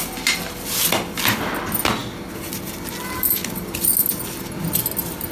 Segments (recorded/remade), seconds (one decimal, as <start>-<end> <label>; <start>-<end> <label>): 0.0-5.3 recorded